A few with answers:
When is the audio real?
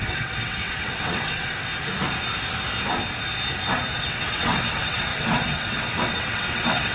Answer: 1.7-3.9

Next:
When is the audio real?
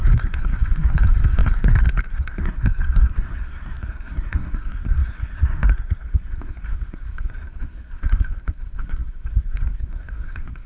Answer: none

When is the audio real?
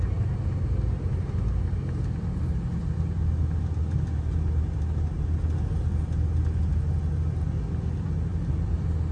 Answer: 0.0-9.1